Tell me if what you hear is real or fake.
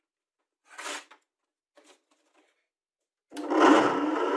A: real